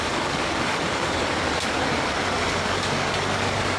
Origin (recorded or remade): remade